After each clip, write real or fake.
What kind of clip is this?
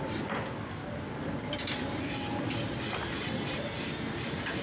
real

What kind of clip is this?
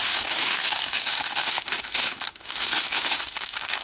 fake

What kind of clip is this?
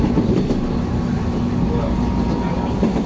real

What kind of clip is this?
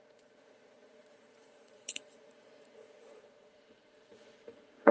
fake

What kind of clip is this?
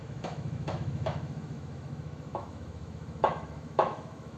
fake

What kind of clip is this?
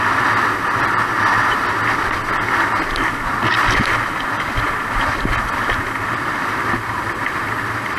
real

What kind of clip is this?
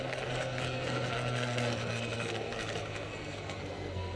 fake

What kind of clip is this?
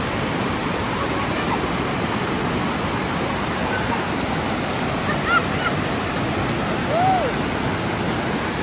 real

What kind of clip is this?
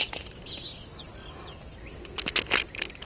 real